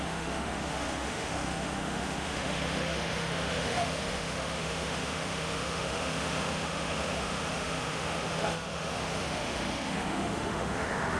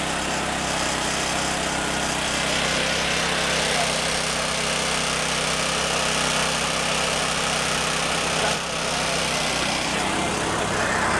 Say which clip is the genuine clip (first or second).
second